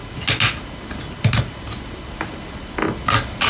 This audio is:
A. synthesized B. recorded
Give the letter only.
B